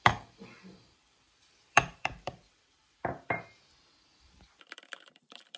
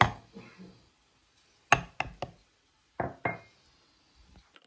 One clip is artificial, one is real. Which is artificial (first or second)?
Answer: first